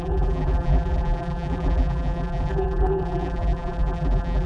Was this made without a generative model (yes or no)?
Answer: no